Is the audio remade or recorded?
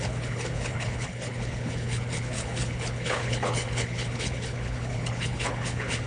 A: remade